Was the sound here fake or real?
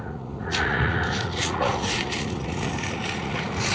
fake